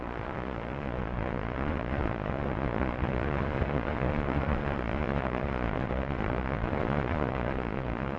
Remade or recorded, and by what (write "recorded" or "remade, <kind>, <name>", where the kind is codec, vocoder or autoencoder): remade, vocoder, Vocos